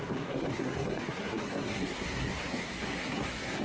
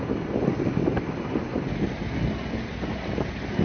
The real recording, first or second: second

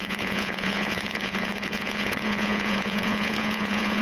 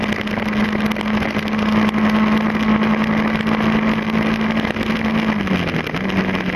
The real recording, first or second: second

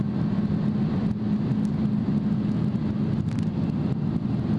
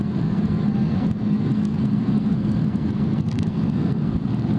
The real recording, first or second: first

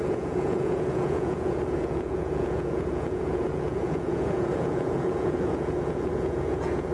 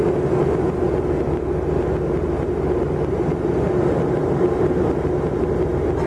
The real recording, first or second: second